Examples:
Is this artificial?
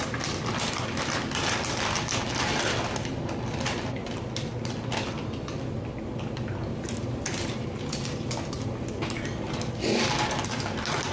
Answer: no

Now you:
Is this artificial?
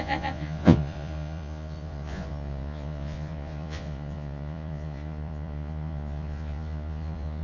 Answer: yes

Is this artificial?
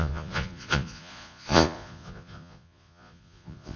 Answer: yes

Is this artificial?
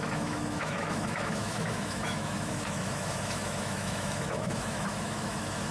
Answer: yes